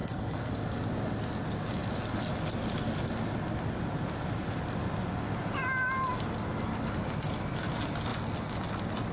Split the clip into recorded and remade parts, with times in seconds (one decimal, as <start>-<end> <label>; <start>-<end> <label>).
0.0-0.5 remade; 0.5-9.1 recorded